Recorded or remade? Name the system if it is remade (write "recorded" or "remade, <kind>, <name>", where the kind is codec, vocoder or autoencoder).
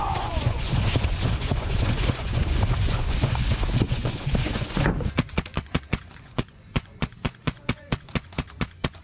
remade, vocoder, Vocos